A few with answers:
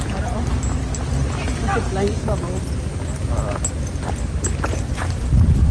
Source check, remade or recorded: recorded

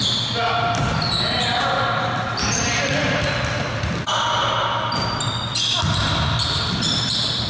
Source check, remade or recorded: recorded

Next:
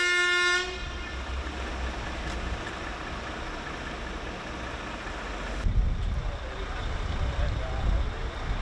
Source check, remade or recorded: recorded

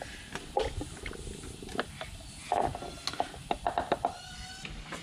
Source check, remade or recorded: recorded